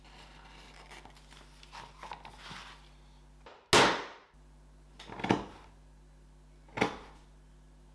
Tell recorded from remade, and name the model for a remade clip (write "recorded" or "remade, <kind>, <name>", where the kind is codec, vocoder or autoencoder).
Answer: recorded